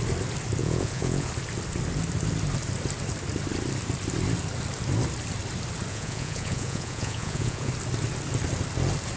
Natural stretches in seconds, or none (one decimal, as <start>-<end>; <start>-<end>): 0.0-0.6; 1.3-5.9; 7.7-9.2